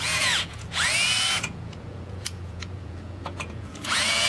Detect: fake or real fake